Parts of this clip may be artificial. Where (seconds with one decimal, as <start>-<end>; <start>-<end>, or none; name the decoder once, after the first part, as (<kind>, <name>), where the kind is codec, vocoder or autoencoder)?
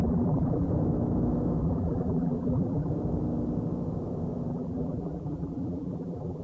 0.0-0.7 (vocoder, BigVGAN v2); 1.6-2.9; 4.5-6.4